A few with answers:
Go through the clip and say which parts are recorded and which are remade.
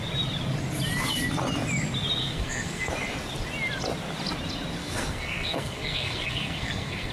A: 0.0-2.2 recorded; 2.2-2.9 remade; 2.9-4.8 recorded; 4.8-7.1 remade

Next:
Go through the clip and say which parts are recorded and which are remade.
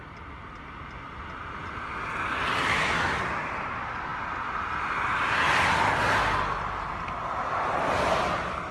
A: 0.0-8.7 recorded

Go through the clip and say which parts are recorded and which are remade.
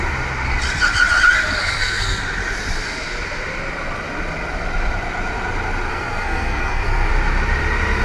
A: 0.0-1.6 recorded; 1.6-2.2 remade; 2.2-5.9 recorded; 5.9-7.1 remade; 7.1-8.0 recorded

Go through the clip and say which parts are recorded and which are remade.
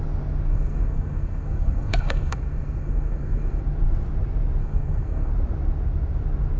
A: 0.0-0.5 recorded; 0.5-3.6 remade; 3.6-4.6 recorded; 4.6-5.3 remade; 5.3-6.6 recorded